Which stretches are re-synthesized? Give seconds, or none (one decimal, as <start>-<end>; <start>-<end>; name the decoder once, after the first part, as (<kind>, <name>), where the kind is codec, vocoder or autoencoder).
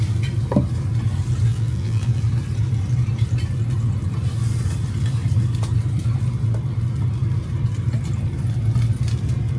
1.5-2.2 (vocoder, BigVGAN v2)